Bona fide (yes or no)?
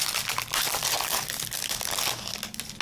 yes